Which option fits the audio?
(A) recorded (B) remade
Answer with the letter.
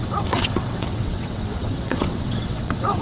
B